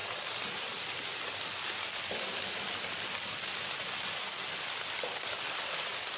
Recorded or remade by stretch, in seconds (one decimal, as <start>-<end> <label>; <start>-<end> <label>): 0.0-6.2 recorded